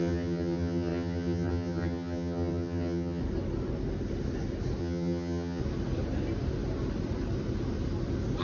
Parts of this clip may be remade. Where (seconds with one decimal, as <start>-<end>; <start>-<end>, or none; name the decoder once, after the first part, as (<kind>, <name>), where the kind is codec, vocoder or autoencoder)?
0.0-3.2 (vocoder, HiFi-GAN); 4.8-5.6